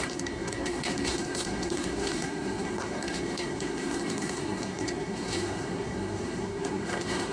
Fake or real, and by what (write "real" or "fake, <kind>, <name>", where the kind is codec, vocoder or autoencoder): fake, codec, SNAC